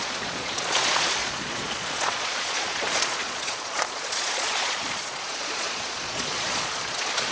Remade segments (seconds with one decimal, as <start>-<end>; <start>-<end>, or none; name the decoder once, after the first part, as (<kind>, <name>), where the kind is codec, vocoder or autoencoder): 0.0-7.3 (vocoder, Vocos)